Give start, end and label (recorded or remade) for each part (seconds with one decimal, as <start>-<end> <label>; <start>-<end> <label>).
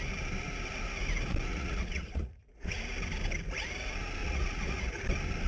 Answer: 0.0-1.5 recorded; 1.5-2.8 remade; 2.8-4.2 recorded; 4.2-5.0 remade; 5.0-5.5 recorded